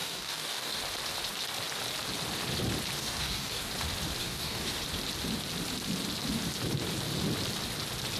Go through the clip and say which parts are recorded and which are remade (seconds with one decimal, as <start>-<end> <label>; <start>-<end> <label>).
0.0-0.8 remade; 0.8-3.0 recorded; 3.0-3.7 remade; 3.7-4.2 recorded; 4.2-4.8 remade; 4.8-8.2 recorded